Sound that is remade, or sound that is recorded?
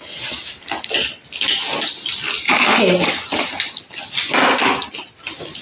recorded